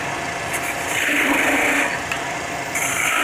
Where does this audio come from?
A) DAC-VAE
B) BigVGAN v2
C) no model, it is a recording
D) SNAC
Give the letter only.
B